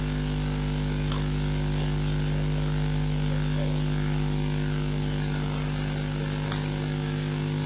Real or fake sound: real